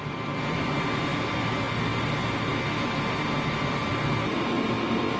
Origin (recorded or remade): recorded